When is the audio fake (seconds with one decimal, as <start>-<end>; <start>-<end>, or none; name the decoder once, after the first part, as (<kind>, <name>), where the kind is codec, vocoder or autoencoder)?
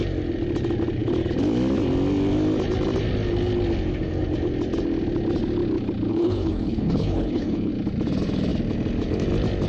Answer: 6.1-7.7 (codec, HILCodec)